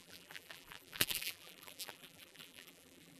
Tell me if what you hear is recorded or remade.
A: remade